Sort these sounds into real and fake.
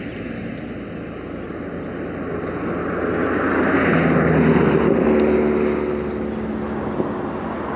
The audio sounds real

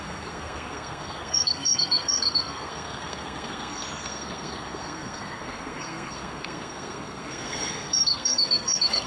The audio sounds fake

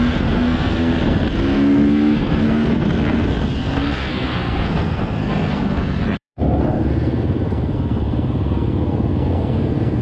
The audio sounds fake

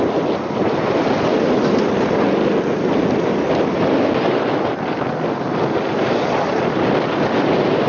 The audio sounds real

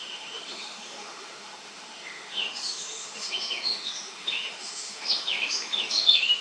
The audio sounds fake